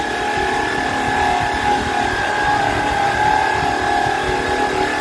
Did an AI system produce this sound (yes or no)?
no